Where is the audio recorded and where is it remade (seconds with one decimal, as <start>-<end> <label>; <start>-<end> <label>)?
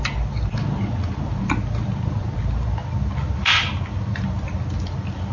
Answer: 0.0-5.3 recorded